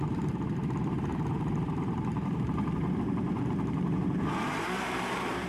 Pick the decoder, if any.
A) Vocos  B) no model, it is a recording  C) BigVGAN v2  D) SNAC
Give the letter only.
C